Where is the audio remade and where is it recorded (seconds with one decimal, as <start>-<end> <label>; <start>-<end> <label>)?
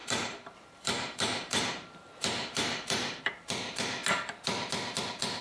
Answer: 0.0-4.0 remade; 4.0-5.0 recorded; 5.0-5.4 remade